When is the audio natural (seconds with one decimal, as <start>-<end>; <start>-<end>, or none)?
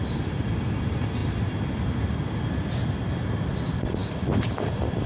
0.0-5.1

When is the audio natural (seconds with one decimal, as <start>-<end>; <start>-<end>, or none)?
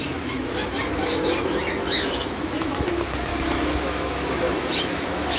none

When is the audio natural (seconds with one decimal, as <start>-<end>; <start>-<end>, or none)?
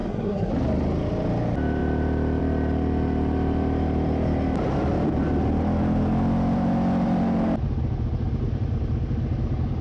0.5-9.8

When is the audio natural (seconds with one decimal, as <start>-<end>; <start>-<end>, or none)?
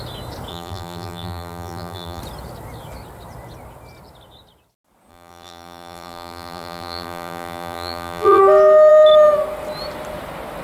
0.0-0.5; 2.2-5.1; 8.4-10.6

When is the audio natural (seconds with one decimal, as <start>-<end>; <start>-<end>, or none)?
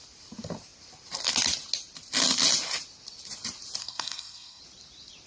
0.0-3.8; 4.6-5.3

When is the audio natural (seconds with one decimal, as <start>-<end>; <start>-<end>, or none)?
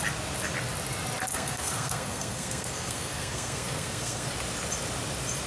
0.0-1.3; 4.3-5.5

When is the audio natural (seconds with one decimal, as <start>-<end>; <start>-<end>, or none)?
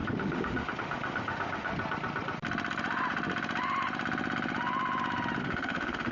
1.7-5.4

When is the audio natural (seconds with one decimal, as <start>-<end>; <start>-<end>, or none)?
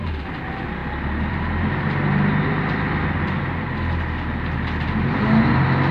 0.0-5.9